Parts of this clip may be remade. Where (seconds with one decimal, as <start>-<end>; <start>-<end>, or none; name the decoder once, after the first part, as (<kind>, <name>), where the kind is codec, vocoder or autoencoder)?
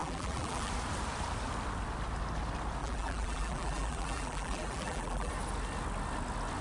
0.0-0.7 (vocoder, BigVGAN v2); 2.8-5.3